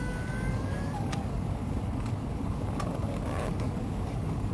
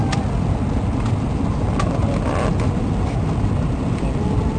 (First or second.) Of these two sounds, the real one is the second